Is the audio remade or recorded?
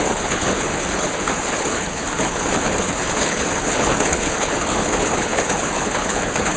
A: remade